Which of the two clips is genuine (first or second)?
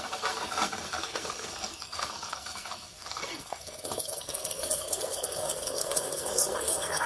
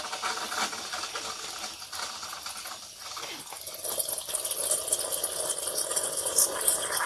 second